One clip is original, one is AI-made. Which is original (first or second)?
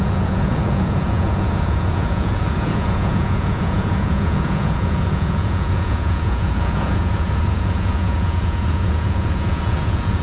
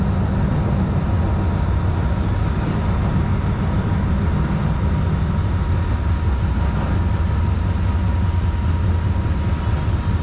second